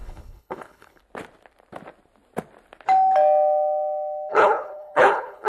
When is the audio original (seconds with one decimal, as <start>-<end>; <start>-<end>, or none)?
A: 1.0-4.3